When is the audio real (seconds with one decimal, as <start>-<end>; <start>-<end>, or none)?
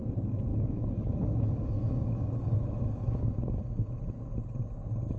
0.0-0.5; 3.6-5.2